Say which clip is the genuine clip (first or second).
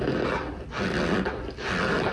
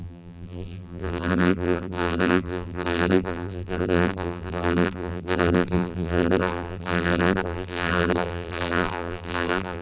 first